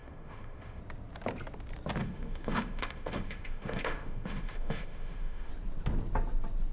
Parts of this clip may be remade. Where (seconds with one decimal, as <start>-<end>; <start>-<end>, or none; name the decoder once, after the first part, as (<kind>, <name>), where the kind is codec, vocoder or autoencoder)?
0.0-0.8 (autoencoder, DAC-VAE); 2.0-5.5